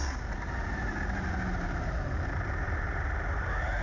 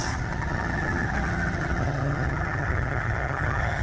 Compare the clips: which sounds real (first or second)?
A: first